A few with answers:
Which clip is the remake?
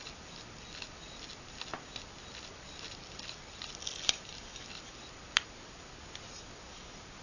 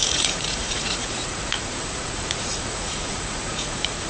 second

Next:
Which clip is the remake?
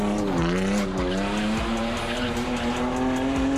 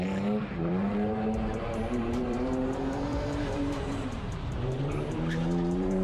second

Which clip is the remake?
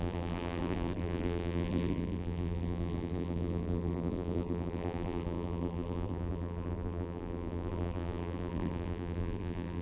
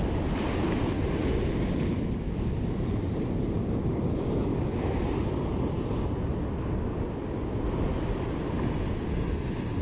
first